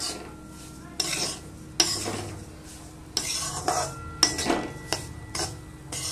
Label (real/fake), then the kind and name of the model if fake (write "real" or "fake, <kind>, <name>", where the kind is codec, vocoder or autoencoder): real